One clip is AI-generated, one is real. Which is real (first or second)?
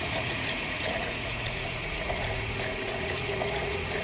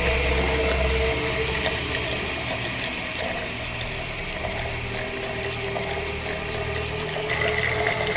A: second